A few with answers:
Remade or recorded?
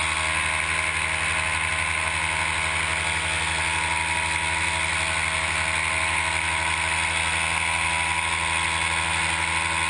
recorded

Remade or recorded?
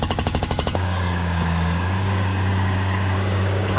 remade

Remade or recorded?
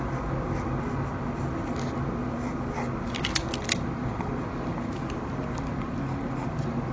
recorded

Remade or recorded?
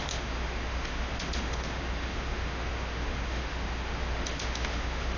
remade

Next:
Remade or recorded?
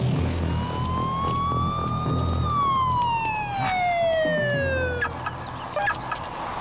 recorded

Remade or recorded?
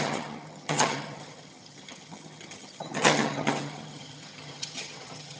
remade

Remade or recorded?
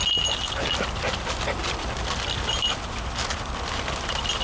recorded